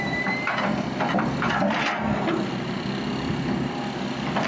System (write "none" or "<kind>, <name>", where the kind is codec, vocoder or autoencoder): none